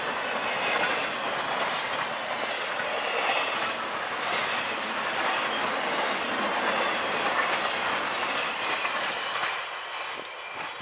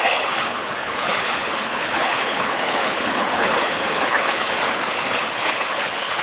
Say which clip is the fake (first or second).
second